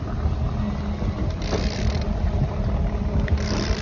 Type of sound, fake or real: real